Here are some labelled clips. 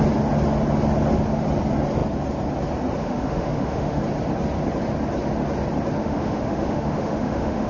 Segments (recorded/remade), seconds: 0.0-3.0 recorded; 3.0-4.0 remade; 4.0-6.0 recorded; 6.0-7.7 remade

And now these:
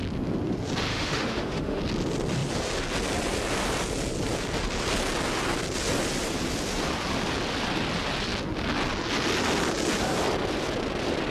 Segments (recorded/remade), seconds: 0.0-0.9 recorded; 0.9-1.8 remade; 1.8-11.3 recorded

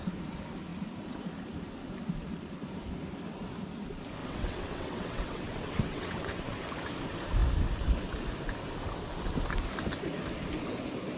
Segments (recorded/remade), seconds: 0.0-4.2 recorded; 4.2-6.4 remade; 6.4-11.2 recorded